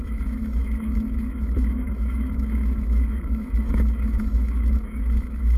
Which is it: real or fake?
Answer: fake